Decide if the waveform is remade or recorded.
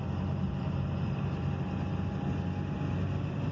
recorded